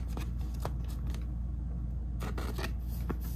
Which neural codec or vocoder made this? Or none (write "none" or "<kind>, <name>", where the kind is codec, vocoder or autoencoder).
none